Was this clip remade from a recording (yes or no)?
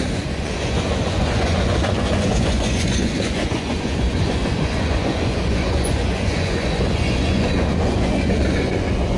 yes